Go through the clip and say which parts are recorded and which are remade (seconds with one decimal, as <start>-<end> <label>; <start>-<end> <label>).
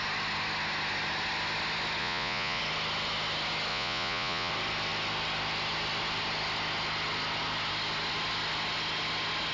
0.0-2.0 recorded; 2.0-2.6 remade; 2.6-3.7 recorded; 3.7-4.5 remade; 4.5-9.5 recorded